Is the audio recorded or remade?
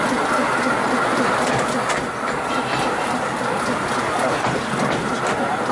recorded